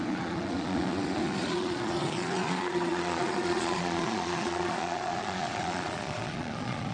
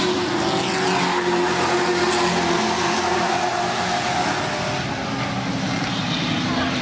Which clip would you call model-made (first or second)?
first